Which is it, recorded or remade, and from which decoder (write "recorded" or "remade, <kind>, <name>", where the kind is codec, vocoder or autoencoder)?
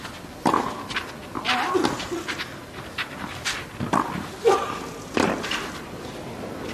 recorded